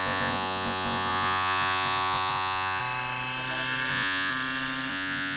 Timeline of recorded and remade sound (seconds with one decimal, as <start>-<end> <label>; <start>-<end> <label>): 0.0-2.8 remade; 2.8-3.9 recorded; 3.9-4.3 remade; 4.3-4.9 recorded; 4.9-5.4 remade